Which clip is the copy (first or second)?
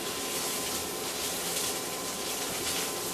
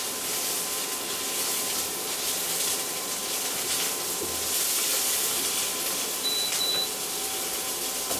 second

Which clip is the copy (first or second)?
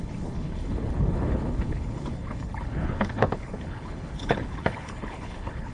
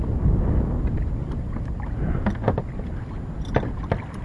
first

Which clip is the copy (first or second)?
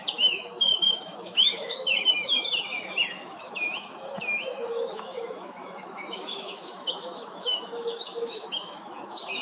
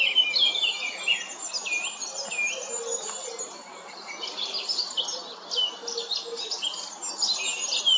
first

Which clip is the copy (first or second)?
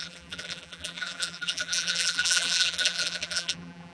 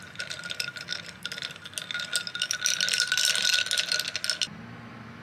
first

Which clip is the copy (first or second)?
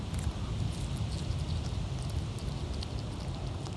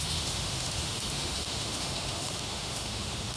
second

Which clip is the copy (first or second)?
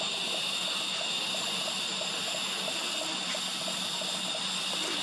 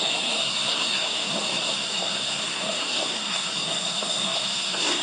second